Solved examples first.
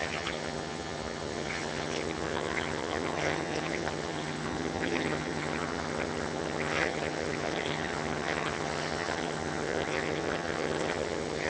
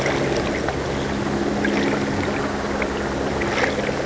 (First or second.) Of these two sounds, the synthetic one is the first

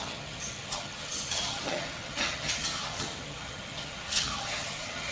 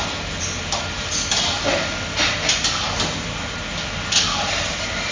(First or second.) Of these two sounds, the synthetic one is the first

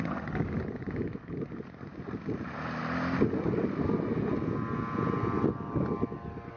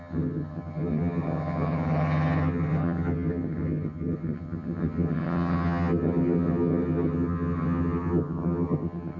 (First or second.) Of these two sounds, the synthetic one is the second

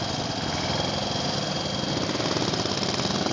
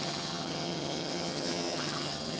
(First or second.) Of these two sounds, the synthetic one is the second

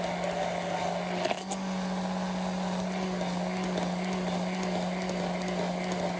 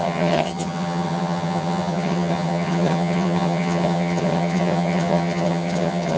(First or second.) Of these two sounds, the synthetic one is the second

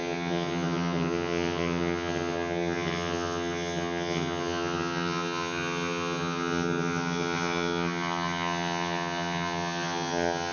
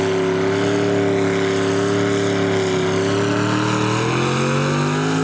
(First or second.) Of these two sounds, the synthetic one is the first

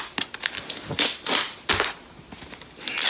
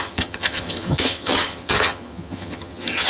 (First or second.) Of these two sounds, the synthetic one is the second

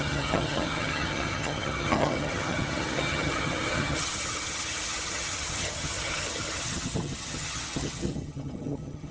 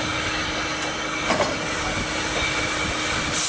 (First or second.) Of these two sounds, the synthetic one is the first